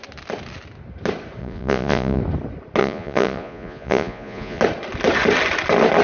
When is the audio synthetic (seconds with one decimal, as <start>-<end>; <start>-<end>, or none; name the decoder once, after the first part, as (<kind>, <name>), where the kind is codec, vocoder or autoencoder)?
1.4-2.2 (vocoder, Vocos); 2.8-4.6